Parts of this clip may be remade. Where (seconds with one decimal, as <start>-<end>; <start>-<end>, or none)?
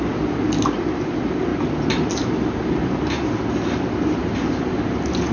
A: none